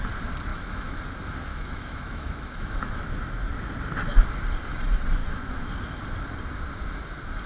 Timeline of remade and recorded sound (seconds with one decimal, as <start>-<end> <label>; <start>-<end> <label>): 0.0-0.5 recorded; 0.5-1.0 remade; 1.0-1.5 recorded; 1.5-3.0 remade; 3.0-5.2 recorded; 5.2-5.7 remade; 5.7-7.5 recorded